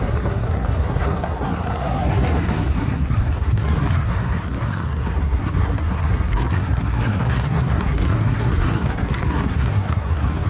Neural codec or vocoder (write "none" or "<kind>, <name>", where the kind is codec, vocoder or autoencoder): codec, SNAC